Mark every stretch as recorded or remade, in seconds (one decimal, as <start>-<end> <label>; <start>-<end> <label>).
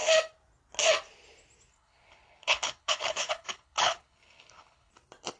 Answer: 0.0-1.7 recorded; 1.7-4.9 remade; 4.9-5.4 recorded